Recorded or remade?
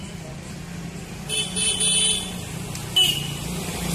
recorded